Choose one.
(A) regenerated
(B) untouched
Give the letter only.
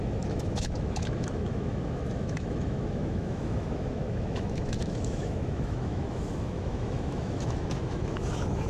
A